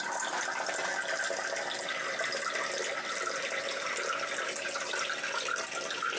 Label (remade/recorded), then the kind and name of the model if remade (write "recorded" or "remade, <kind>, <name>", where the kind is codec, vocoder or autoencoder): remade, vocoder, BigVGAN v2